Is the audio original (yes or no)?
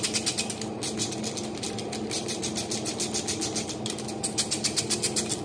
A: yes